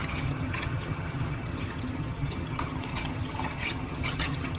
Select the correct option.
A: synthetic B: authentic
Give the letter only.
A